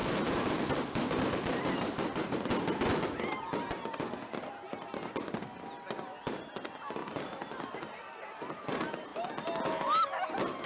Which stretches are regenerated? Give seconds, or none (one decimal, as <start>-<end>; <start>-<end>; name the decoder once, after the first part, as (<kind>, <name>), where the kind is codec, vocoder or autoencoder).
0.0-2.5 (vocoder, BigVGAN v2); 7.0-8.0